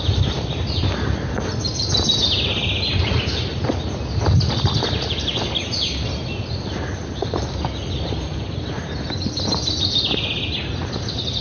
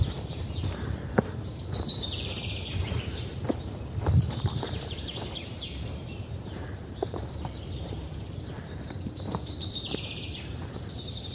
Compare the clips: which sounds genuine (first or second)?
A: first